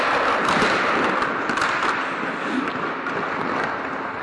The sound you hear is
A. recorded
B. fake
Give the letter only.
A